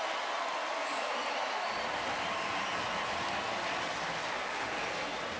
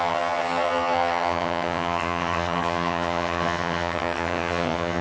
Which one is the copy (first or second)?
second